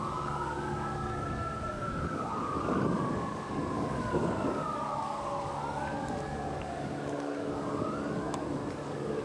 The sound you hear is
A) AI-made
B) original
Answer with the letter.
A